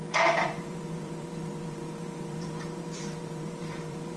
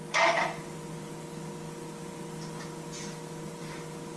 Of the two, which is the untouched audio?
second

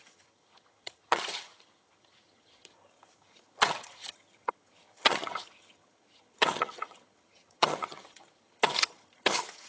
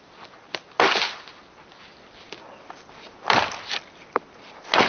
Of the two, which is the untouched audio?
second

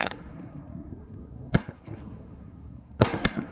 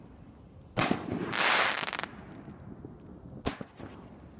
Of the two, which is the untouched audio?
second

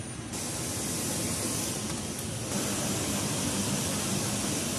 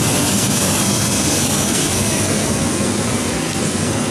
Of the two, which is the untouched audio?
first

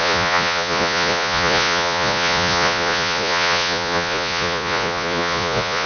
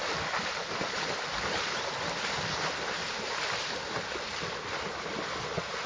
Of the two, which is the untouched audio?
second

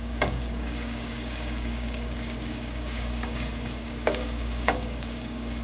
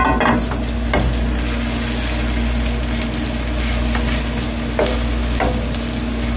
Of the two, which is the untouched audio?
second